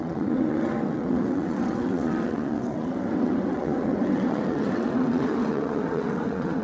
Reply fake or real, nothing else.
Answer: fake